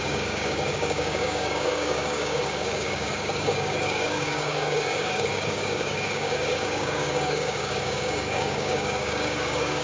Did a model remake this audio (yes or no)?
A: yes